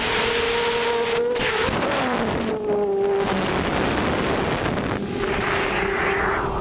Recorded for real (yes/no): yes